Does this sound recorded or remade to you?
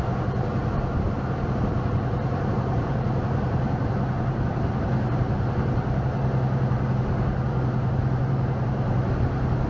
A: remade